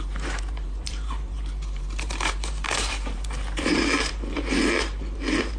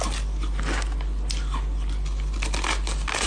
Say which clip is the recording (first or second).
second